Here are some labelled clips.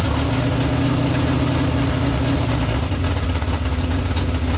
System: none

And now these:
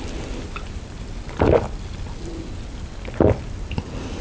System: none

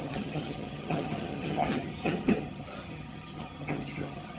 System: vocoder, HiFi-GAN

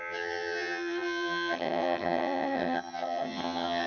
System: vocoder, HiFi-GAN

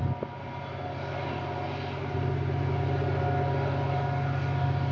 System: none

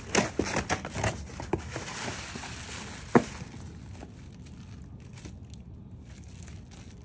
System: none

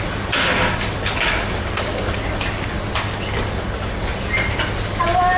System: none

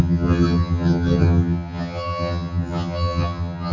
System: vocoder, HiFi-GAN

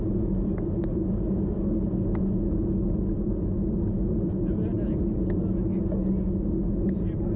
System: none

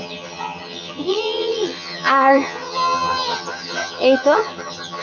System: vocoder, HiFi-GAN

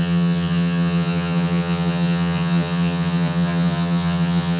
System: vocoder, HiFi-GAN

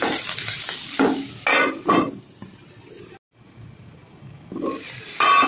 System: none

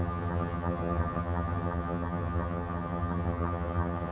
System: vocoder, HiFi-GAN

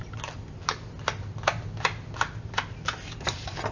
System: none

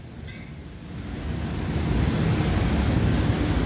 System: none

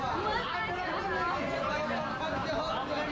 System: none